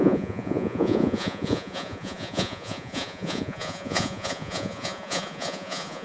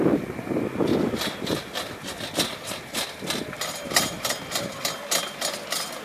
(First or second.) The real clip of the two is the second